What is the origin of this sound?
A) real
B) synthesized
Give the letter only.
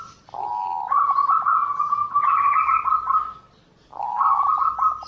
A